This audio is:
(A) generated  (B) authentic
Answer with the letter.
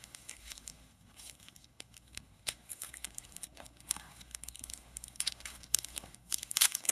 A